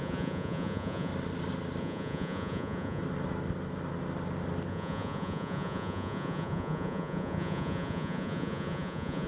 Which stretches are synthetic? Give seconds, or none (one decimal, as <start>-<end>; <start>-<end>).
0.0-1.1; 1.8-3.0; 4.7-9.3